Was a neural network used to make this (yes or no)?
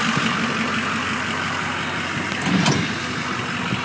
no